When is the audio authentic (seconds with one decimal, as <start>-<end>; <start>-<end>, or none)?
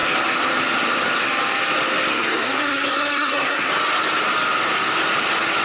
0.0-2.1; 3.7-5.6